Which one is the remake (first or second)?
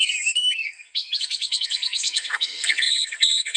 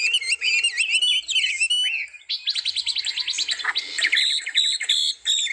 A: first